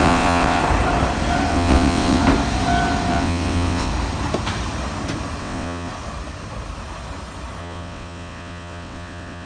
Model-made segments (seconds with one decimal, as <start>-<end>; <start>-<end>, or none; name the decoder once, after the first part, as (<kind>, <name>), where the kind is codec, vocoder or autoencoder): 0.0-0.6 (vocoder, WaveNeXt); 1.5-2.2; 3.1-3.9; 5.4-5.9; 7.6-9.5